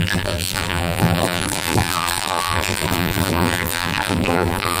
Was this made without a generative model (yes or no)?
no